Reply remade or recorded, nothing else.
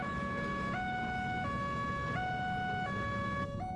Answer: recorded